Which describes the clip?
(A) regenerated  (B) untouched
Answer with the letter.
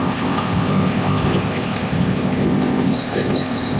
A